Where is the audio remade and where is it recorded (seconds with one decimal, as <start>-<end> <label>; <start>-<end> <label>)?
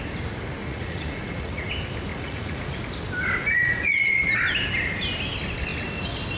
0.0-0.6 recorded; 0.6-1.7 remade; 1.7-2.1 recorded; 2.1-2.8 remade; 2.8-3.4 recorded; 3.4-4.4 remade; 4.4-6.4 recorded